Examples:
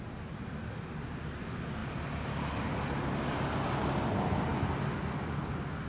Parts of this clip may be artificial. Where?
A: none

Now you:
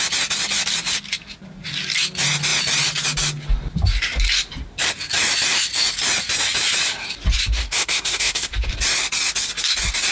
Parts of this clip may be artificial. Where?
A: 7.6-8.5 (codec, SNAC)

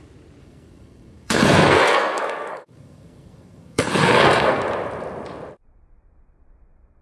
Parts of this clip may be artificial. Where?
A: 0.4-4.6 (codec, SNAC)